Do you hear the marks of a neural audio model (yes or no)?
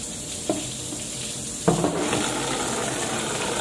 no